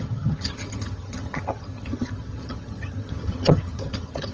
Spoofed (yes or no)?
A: yes